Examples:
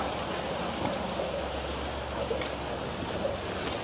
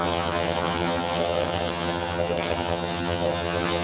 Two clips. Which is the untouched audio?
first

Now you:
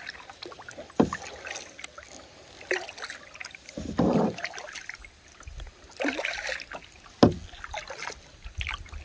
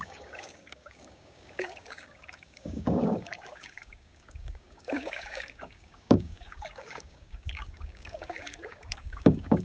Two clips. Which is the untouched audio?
first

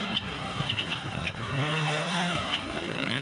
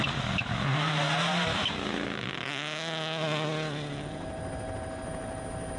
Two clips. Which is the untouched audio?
second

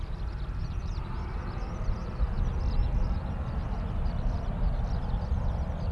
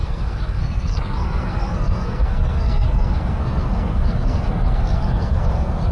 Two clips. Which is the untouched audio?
first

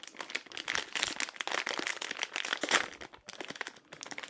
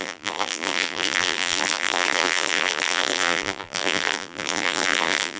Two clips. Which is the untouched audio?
first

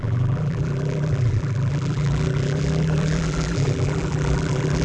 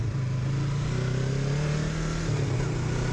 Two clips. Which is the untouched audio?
second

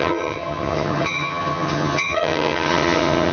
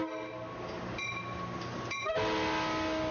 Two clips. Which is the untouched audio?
second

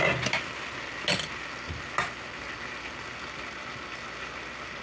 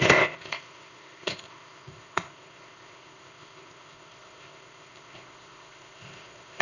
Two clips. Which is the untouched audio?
first